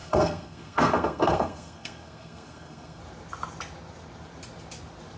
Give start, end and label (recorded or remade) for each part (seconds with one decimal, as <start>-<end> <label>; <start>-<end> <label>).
0.0-3.0 remade; 3.0-5.2 recorded